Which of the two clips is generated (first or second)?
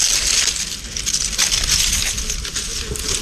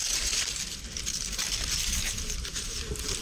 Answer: second